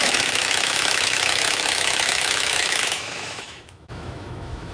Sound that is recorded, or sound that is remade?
remade